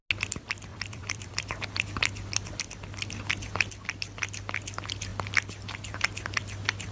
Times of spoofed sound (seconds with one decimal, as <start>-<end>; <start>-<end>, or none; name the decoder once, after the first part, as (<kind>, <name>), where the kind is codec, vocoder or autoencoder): 0.7-2.6 (vocoder, BigVGAN v2)